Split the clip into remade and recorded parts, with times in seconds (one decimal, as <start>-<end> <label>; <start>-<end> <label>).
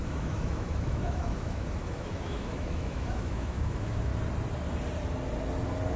0.0-4.1 remade; 4.1-6.0 recorded